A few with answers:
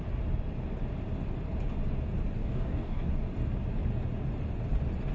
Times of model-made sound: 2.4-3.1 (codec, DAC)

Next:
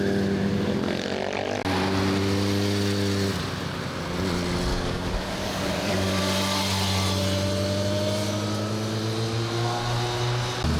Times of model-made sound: 4.7-6.2 (codec, DAC)

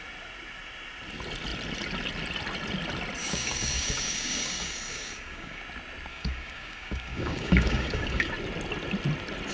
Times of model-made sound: 3.2-5.6 (codec, DAC); 6.1-8.3

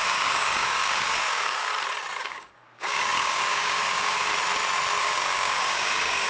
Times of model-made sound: 0.0-1.7 (codec, DAC); 2.2-4.3; 5.0-6.3